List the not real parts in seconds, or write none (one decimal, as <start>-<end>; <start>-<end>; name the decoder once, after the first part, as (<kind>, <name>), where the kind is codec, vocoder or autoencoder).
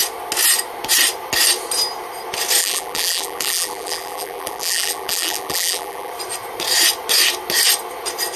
2.6-6.1 (vocoder, BigVGAN v2)